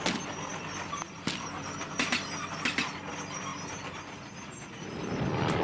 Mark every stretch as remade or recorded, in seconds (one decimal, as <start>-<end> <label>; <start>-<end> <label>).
0.0-3.5 recorded; 3.5-4.4 remade; 4.4-5.6 recorded